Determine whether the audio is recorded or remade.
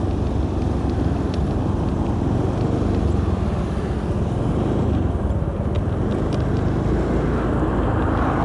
recorded